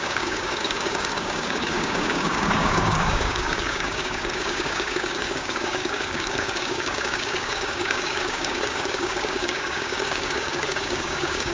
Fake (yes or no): yes